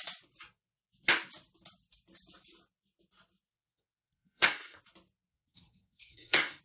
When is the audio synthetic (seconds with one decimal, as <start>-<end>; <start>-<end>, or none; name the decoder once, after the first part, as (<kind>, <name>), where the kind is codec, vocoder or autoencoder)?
3.5-4.8 (codec, SNAC); 5.3-6.6